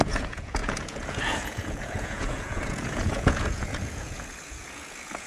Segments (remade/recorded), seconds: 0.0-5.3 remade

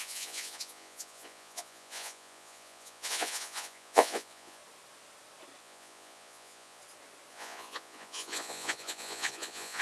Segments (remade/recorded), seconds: 0.0-4.6 remade; 4.6-5.6 recorded; 5.6-6.8 remade; 6.8-7.3 recorded; 7.3-9.8 remade

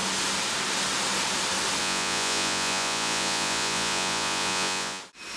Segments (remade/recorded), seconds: 0.0-1.8 recorded; 1.8-5.0 remade; 5.0-5.4 recorded

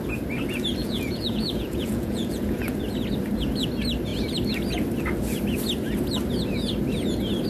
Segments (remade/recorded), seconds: 0.0-0.8 recorded; 0.8-2.8 remade; 2.8-7.5 recorded

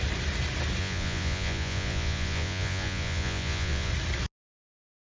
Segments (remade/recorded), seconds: 0.0-0.8 recorded; 0.8-3.9 remade; 3.9-5.2 recorded

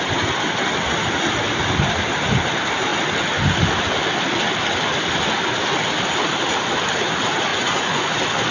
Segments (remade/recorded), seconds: 0.0-7.5 recorded; 7.5-8.1 remade; 8.1-8.5 recorded